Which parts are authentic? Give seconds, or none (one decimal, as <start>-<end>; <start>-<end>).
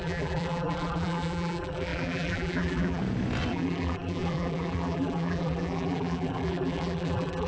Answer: 3.0-3.5